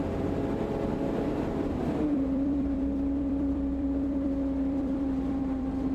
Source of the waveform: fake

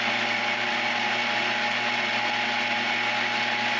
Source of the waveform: real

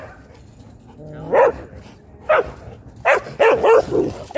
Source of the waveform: real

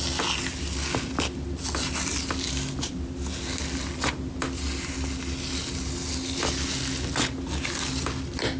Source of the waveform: real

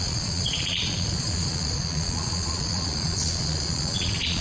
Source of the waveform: fake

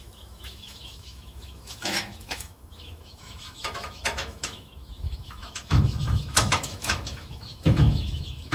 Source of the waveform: fake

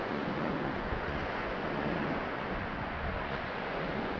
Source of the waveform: fake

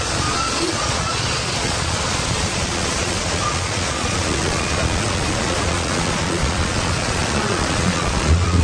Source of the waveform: fake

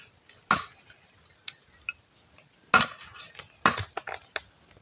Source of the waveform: real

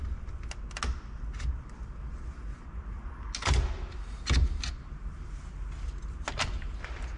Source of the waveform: real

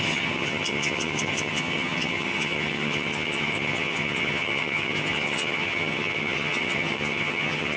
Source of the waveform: fake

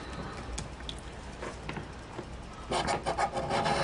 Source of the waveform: real